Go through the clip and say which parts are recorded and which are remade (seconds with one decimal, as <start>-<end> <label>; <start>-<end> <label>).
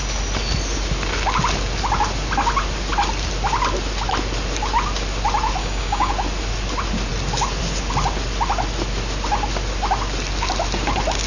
0.0-5.6 recorded; 5.6-6.1 remade; 6.1-11.3 recorded